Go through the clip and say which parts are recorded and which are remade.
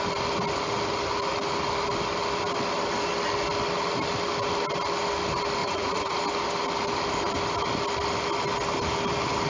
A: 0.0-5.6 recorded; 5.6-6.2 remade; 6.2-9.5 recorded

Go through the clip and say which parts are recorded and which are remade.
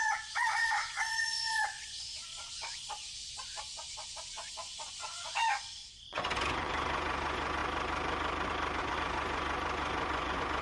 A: 0.0-7.6 remade; 7.6-8.8 recorded; 8.8-10.6 remade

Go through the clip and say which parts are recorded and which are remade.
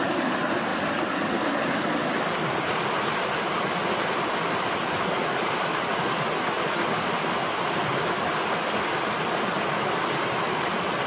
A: 0.0-11.1 recorded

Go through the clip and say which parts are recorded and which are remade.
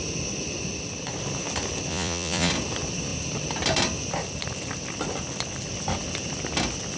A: 0.0-1.9 recorded; 1.9-2.5 remade; 2.5-7.0 recorded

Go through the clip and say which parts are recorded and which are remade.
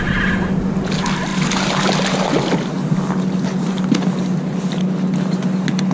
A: 0.0-5.9 recorded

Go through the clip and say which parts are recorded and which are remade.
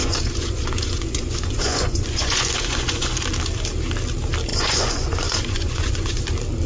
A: 0.0-3.2 remade; 3.2-4.5 recorded; 4.5-6.2 remade; 6.2-6.7 recorded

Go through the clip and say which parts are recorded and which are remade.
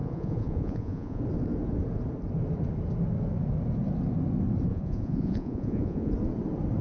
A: 0.0-1.2 remade; 1.2-4.7 recorded; 4.7-6.1 remade; 6.1-6.8 recorded